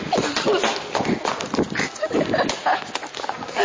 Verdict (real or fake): real